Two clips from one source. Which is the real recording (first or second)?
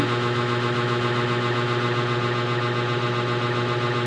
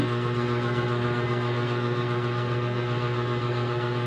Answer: first